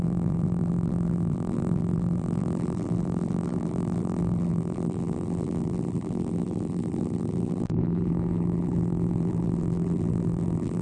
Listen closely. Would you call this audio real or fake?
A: fake